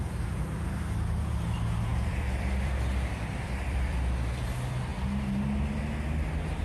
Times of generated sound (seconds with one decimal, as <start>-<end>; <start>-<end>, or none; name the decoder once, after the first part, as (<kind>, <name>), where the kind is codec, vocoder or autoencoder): 1.9-4.0 (vocoder, BigVGAN v2)

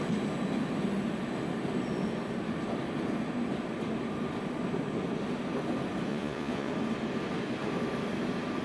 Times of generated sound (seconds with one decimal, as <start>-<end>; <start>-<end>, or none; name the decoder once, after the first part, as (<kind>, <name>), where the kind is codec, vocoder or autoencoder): 6.1-6.7 (vocoder, Vocos)

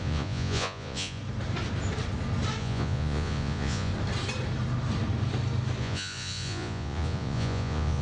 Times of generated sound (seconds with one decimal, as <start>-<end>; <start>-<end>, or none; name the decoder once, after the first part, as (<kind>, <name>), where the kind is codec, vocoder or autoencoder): 0.0-1.2 (vocoder, Vocos); 2.6-3.9; 5.8-8.0

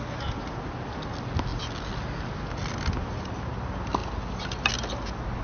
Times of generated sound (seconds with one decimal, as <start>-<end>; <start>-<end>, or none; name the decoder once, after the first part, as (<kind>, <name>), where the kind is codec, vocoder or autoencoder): none

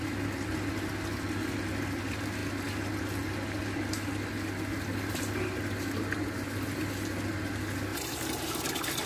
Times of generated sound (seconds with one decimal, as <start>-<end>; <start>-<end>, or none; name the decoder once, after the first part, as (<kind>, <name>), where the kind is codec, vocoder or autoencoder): 7.9-8.6 (vocoder, BigVGAN v2)

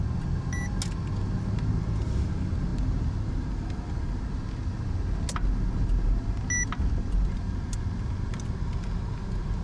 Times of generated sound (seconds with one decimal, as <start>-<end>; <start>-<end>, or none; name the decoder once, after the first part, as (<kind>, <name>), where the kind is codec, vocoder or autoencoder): none

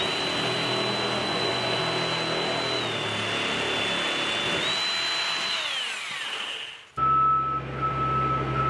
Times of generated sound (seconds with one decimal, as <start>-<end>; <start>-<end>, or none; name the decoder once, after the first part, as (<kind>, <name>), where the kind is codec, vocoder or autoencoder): 1.2-1.8 (vocoder, Vocos)

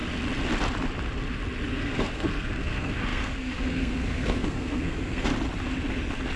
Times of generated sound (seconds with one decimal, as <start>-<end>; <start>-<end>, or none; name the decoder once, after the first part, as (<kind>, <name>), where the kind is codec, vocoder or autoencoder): 1.7-5.3 (codec, SNAC)